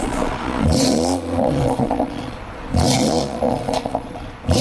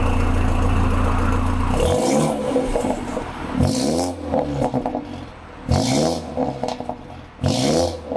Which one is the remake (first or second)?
first